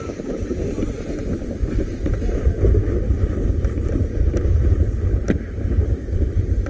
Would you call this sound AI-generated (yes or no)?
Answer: yes